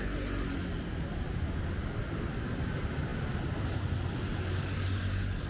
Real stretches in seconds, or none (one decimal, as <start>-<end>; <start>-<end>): 0.0-5.5